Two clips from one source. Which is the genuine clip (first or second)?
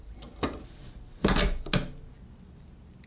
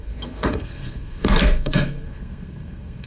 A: first